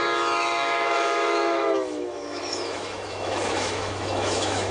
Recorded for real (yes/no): no